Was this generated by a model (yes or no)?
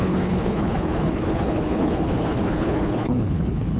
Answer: yes